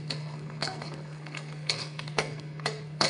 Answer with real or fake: fake